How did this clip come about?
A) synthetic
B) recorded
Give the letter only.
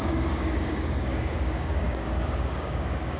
A